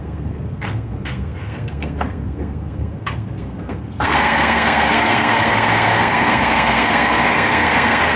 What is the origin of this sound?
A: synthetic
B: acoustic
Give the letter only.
A